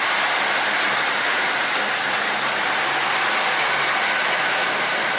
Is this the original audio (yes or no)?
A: yes